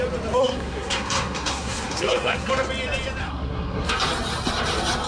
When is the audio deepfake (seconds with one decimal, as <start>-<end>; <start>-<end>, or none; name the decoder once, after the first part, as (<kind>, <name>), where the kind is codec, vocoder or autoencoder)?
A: 0.4-2.5 (codec, SNAC); 3.2-3.9